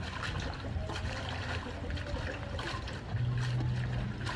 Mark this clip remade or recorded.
recorded